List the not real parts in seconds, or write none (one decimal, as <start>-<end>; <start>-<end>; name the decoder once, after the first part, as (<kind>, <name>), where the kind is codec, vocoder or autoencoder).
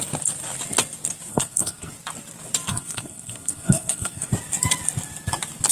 1.3-1.9 (codec, SNAC); 2.7-4.3